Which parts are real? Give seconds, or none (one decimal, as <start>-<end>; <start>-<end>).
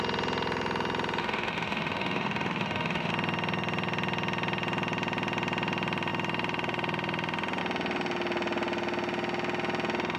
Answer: 0.0-1.2; 3.1-10.2